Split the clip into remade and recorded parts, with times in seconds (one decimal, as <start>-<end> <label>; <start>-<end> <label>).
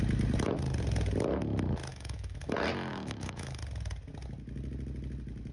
0.0-1.9 recorded; 1.9-2.5 remade; 2.5-2.9 recorded; 2.9-3.6 remade; 3.6-5.5 recorded